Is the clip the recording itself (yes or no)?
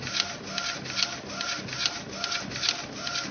yes